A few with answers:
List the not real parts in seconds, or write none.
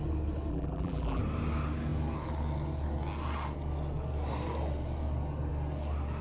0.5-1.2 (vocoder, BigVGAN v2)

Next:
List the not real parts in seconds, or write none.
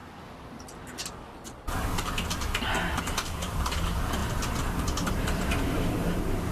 3.0-4.2 (vocoder, BigVGAN v2); 5.1-6.5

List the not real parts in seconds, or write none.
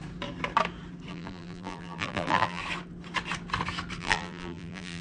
1.1-2.6 (vocoder, BigVGAN v2); 4.0-5.0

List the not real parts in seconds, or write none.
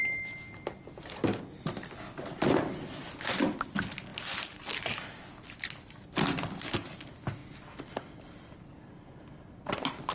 4.1-4.7 (vocoder, BigVGAN v2)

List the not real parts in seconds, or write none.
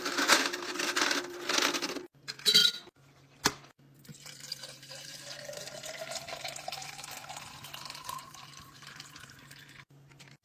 2.6-3.4 (vocoder, BigVGAN v2); 4.1-5.2; 7.8-9.4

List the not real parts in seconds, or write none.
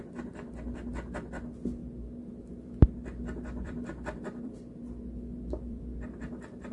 1.8-5.8 (vocoder, BigVGAN v2)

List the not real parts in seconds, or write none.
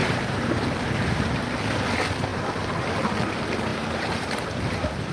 0.0-0.6 (vocoder, BigVGAN v2); 3.7-4.6